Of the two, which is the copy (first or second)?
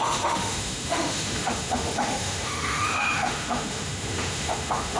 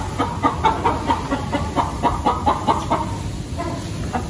first